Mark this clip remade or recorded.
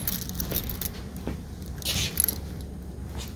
recorded